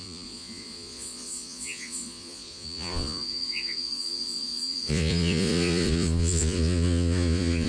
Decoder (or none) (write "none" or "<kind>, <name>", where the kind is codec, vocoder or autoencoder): vocoder, Vocos